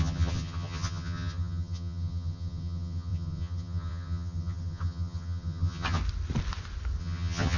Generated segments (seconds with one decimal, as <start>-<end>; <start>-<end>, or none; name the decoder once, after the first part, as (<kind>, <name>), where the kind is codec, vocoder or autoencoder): 0.0-6.0 (vocoder, HiFi-GAN); 7.0-7.6